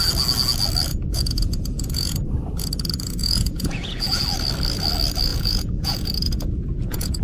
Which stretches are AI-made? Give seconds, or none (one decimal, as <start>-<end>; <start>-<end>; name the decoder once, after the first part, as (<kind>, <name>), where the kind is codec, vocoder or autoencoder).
0.9-2.2 (vocoder, Vocos); 3.2-4.2; 5.3-7.2